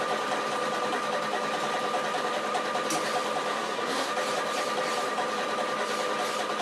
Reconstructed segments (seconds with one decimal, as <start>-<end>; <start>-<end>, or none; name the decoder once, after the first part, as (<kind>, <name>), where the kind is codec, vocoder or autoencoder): 3.5-4.1 (codec, SNAC)